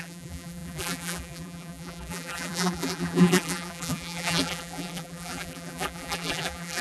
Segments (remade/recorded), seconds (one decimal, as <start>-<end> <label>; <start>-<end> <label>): 0.0-6.8 remade